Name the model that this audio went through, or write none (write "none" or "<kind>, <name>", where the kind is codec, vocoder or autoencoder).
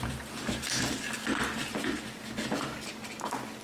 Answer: none